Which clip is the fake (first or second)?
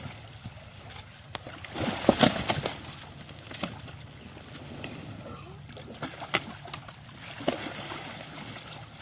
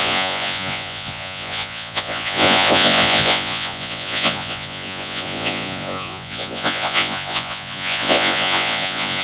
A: second